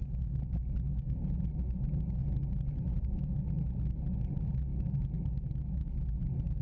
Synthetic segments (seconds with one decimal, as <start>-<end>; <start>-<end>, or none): 0.9-1.5; 2.2-3.2